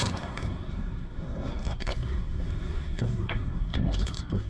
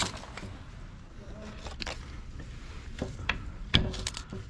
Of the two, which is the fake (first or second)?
first